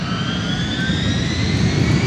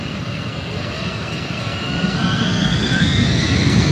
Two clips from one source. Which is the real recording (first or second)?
first